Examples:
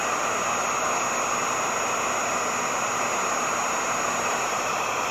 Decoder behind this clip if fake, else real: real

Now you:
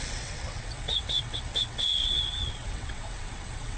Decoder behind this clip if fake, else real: fake, vocoder, WaveNeXt